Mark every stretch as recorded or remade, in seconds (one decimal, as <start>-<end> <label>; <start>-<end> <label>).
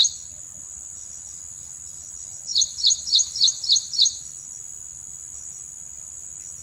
0.0-6.6 recorded